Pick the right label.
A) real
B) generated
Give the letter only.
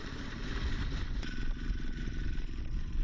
B